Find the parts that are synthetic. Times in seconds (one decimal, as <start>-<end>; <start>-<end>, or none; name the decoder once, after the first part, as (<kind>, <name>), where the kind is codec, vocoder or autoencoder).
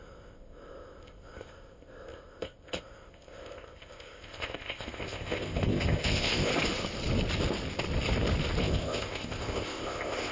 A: 0.0-6.5 (codec, ZipCodec); 8.6-10.3